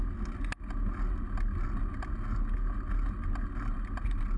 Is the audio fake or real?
real